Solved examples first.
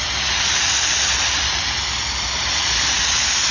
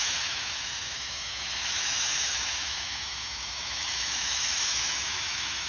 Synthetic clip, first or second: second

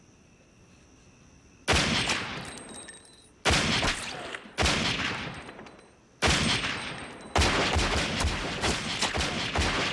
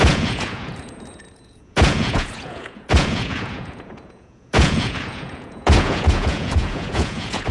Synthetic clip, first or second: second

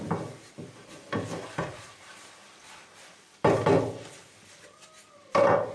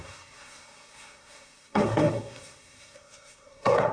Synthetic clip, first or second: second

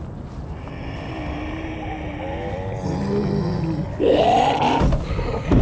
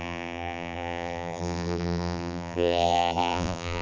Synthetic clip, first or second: second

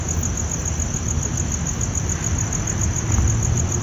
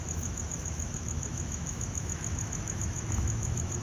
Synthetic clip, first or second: second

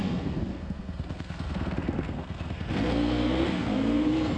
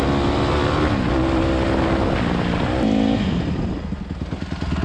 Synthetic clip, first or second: first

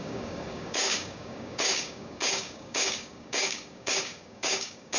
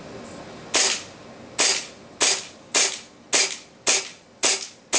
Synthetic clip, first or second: first